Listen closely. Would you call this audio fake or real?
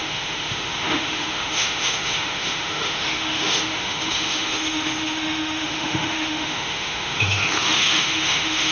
fake